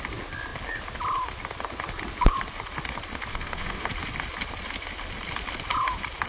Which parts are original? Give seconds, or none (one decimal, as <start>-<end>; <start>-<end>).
0.0-3.3; 3.8-6.3